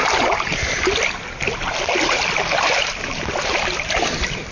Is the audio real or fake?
real